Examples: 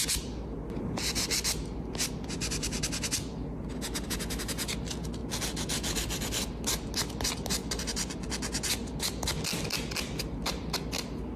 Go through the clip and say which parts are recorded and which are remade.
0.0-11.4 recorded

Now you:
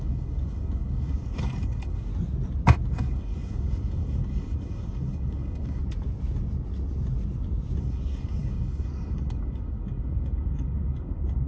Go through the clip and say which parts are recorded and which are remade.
0.0-2.1 remade; 2.1-2.9 recorded; 2.9-5.8 remade; 5.8-7.8 recorded; 7.8-11.5 remade

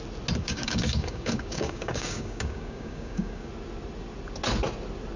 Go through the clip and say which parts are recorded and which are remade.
0.0-0.4 recorded; 0.4-3.5 remade; 3.5-5.2 recorded

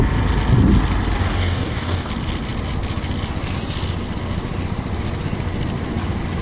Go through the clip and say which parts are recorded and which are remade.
0.0-1.2 recorded; 1.2-2.1 remade; 2.1-6.4 recorded

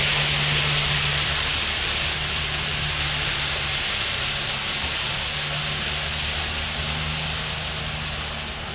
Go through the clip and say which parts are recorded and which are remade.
0.0-8.7 recorded